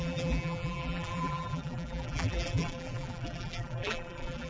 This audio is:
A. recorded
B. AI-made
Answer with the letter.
B